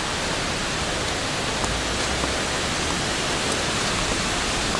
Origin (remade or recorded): recorded